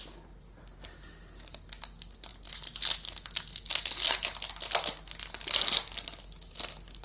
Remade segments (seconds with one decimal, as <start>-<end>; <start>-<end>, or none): none